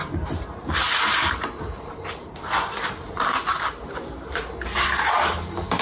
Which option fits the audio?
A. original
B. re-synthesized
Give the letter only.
B